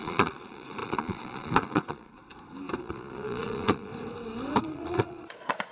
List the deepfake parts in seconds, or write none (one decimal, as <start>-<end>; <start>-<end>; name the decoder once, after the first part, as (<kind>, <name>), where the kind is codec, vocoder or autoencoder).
0.0-2.2 (vocoder, Vocos); 2.8-3.9; 4.6-5.7